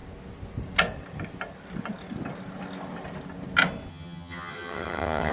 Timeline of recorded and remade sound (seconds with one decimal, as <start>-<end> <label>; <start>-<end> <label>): 0.0-3.9 recorded; 3.9-5.3 remade